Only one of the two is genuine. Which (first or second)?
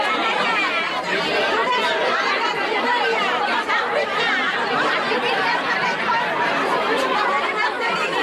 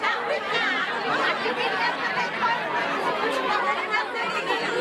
second